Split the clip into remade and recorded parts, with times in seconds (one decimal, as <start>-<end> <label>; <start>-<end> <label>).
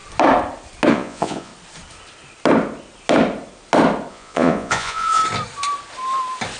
0.0-0.9 recorded; 0.9-1.5 remade; 1.5-4.1 recorded; 4.1-5.2 remade; 5.2-6.6 recorded